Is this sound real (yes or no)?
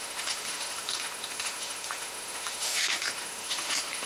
no